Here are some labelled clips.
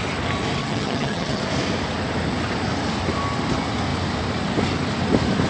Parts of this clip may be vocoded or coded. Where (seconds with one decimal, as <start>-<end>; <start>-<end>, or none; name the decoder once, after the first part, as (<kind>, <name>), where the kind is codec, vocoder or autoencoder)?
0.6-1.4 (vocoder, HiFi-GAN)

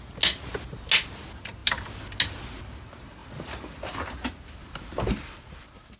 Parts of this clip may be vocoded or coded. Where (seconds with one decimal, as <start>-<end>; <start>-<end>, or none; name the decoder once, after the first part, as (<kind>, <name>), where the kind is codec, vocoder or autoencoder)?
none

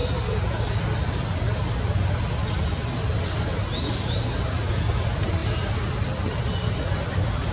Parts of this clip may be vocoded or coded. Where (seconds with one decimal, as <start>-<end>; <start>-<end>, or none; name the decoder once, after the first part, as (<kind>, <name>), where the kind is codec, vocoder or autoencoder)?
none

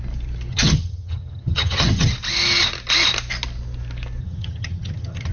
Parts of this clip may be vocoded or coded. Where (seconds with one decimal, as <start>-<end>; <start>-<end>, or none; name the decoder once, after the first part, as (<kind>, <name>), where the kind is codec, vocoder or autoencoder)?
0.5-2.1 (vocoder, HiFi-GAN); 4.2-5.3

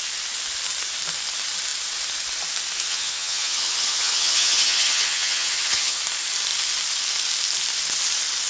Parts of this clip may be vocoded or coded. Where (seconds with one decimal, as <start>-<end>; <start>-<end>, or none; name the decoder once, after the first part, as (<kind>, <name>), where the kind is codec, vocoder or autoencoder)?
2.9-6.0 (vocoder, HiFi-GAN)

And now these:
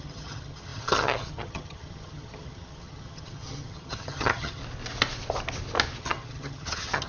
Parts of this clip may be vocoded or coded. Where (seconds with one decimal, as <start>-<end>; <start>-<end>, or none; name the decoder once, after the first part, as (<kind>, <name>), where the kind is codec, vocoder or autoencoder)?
0.0-4.6 (vocoder, HiFi-GAN); 6.0-7.1

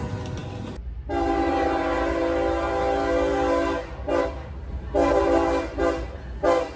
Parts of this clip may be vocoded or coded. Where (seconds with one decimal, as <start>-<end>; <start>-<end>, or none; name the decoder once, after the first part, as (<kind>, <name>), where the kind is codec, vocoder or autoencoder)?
none

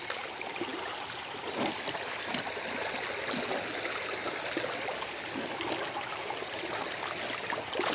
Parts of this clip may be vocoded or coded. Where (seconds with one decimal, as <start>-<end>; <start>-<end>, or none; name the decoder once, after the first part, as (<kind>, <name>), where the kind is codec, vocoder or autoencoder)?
none